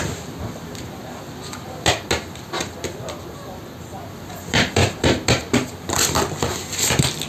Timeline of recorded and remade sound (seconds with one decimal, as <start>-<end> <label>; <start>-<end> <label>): 0.0-7.3 recorded